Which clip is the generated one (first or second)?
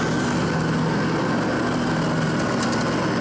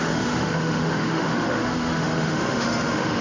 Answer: second